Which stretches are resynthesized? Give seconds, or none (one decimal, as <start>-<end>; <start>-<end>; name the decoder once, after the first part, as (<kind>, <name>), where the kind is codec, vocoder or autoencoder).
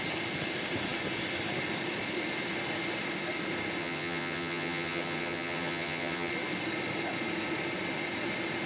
3.8-6.3 (vocoder, HiFi-GAN)